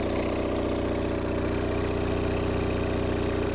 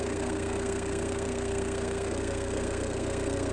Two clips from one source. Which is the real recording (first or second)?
first